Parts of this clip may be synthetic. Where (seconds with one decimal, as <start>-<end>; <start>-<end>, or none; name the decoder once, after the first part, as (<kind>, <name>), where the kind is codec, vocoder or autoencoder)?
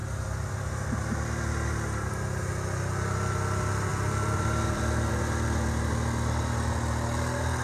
0.0-0.5 (vocoder, BigVGAN v2); 3.9-5.1